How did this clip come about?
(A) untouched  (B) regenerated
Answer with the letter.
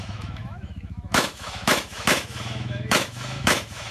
B